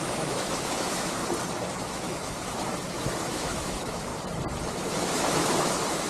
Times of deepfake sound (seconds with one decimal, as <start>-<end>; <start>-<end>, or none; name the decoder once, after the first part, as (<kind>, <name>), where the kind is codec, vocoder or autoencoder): 0.0-1.2 (autoencoder, DAC-VAE); 1.7-4.1; 4.7-6.1